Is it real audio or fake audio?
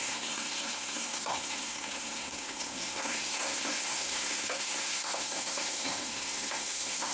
fake